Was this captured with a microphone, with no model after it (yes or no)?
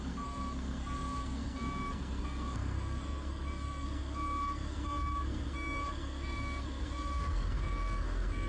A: no